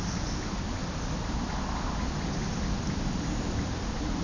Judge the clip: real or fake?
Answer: real